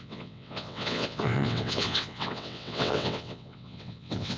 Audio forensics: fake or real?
fake